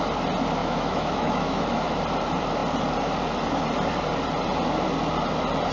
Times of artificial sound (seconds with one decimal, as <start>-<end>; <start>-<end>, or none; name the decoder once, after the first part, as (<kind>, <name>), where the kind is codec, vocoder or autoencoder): 0.6-2.0 (autoencoder, DAC-VAE)